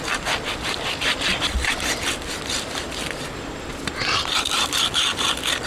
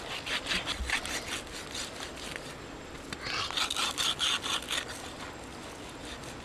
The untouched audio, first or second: second